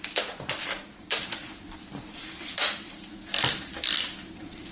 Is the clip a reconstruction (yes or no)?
yes